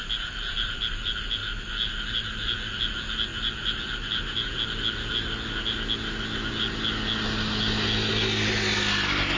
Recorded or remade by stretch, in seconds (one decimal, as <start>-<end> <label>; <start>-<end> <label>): 0.0-9.4 recorded